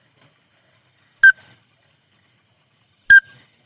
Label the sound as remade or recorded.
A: recorded